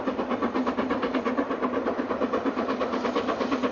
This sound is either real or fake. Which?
real